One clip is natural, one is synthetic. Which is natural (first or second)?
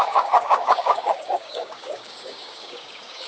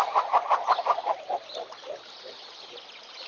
second